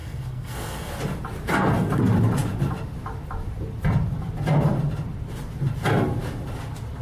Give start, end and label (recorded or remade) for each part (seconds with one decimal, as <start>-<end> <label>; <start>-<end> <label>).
0.0-0.9 remade; 0.9-7.0 recorded